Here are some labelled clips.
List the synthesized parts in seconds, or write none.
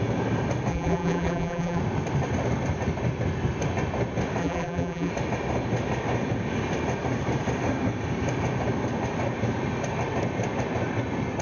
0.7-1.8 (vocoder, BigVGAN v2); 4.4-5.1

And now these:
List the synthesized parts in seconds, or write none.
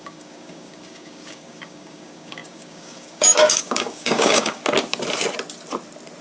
0.0-4.6 (codec, DAC)